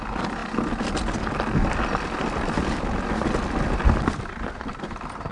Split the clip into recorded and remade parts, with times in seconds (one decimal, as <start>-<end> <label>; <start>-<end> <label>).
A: 0.0-5.3 recorded